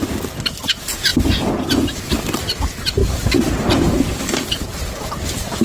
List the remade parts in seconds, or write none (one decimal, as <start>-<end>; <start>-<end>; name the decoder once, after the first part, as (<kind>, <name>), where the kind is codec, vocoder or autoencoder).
3.0-5.0 (vocoder, BigVGAN v2)